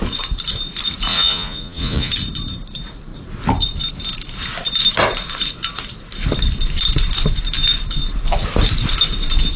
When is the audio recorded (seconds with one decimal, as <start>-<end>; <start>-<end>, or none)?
0.0-1.1; 2.1-9.6